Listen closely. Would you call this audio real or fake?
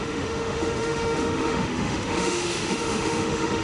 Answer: fake